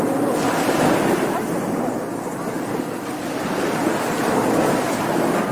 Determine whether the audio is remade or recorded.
recorded